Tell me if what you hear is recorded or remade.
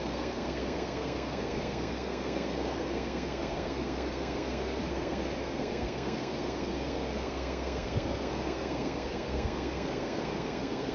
remade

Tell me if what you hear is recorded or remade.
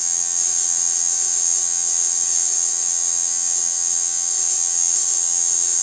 remade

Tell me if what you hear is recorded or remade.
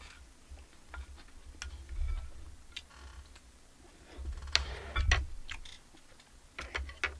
recorded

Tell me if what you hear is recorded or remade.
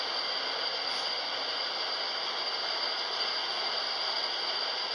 recorded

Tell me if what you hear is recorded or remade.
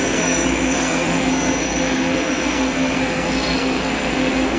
remade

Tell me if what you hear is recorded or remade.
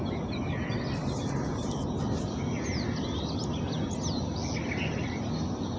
recorded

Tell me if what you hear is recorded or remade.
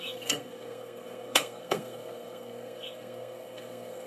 remade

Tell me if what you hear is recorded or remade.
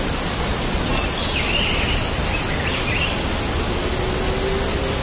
recorded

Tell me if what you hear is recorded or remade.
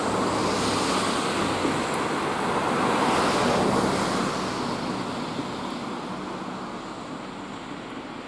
recorded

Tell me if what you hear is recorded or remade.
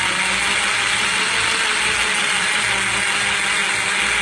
recorded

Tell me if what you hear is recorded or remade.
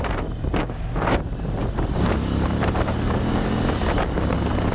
remade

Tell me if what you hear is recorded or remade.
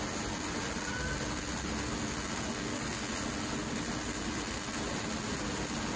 recorded